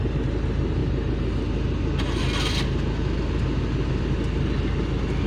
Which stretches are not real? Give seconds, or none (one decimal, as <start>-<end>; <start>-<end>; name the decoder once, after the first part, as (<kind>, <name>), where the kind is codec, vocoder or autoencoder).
none